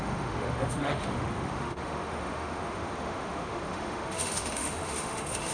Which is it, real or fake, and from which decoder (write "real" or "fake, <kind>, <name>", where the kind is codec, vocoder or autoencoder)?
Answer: fake, autoencoder, DAC-VAE